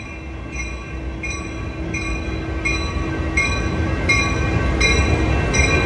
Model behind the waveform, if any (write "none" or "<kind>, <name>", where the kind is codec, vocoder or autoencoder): none